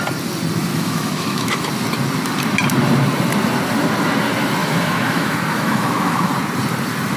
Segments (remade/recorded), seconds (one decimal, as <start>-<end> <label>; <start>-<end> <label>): 0.0-0.7 recorded; 0.7-1.7 remade; 1.7-4.6 recorded; 4.6-6.3 remade; 6.3-7.2 recorded